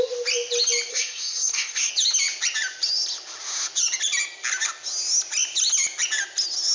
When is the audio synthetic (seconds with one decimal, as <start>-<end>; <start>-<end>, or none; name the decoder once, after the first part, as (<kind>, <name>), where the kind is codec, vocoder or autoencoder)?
0.9-1.9 (codec, SNAC)